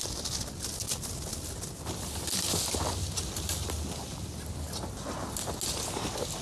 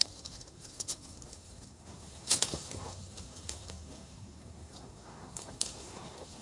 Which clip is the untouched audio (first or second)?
first